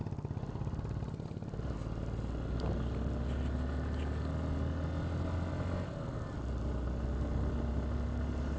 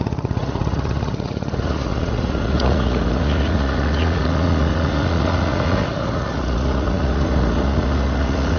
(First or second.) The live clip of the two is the first